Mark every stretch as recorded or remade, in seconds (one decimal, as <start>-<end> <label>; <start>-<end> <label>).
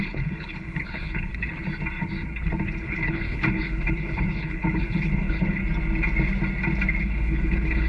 0.0-1.3 remade; 1.3-2.8 recorded; 2.8-5.6 remade; 5.6-7.0 recorded; 7.0-7.9 remade